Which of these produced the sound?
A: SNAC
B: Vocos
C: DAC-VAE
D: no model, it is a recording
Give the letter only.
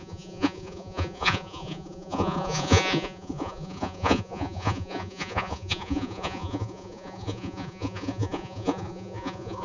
B